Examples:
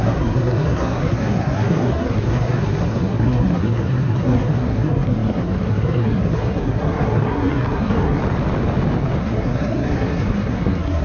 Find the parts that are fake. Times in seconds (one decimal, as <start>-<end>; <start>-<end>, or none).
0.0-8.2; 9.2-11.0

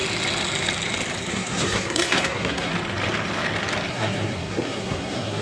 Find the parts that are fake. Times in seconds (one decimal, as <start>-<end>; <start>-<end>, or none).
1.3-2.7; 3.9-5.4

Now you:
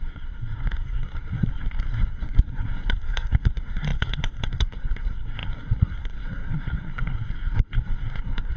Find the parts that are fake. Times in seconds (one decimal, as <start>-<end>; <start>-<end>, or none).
0.0-8.6

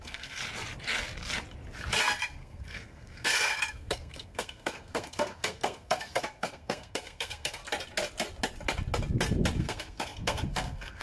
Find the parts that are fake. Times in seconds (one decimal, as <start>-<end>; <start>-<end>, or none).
0.0-0.4; 2.0-7.6; 9.6-11.0